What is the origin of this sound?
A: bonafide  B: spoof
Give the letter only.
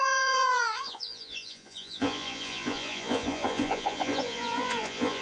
B